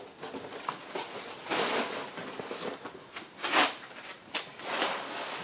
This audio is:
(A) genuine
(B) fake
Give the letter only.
B